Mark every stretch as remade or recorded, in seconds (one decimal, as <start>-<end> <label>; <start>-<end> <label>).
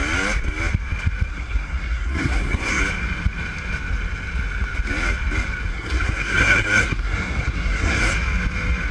0.0-1.3 recorded; 1.3-2.8 remade; 2.8-5.7 recorded; 5.7-8.1 remade; 8.1-8.9 recorded